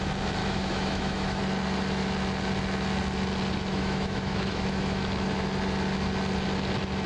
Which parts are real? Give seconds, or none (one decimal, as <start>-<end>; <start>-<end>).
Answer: 0.0-0.4; 1.4-3.7; 5.0-7.1